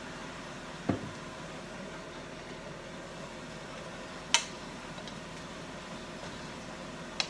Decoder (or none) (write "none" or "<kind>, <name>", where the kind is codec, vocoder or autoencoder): none